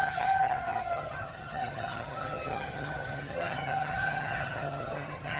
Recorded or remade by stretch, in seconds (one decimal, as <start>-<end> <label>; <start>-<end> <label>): 0.0-5.4 remade